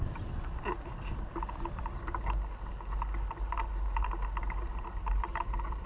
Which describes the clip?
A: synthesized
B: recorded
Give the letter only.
B